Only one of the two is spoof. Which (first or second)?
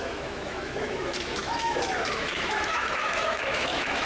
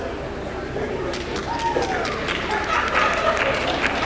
first